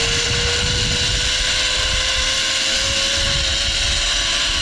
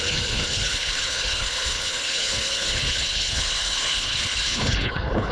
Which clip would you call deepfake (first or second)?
second